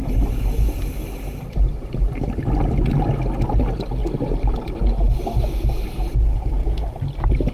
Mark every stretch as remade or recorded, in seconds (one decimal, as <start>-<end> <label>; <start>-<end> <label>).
0.0-1.0 recorded; 1.0-2.2 remade; 2.2-6.6 recorded; 6.6-7.5 remade